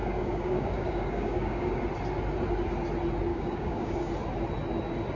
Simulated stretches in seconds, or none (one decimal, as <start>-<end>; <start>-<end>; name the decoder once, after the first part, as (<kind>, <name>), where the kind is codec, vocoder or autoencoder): 0.0-1.8 (codec, DAC); 3.3-4.1